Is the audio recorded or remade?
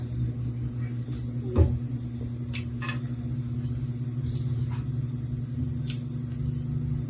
recorded